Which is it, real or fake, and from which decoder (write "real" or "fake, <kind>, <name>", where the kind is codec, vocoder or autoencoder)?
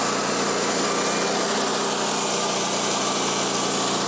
real